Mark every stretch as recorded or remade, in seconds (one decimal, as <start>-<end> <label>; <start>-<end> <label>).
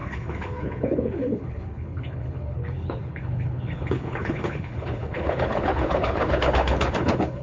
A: 0.0-7.4 remade